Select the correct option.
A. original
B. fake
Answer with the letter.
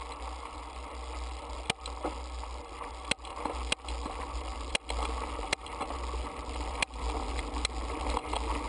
A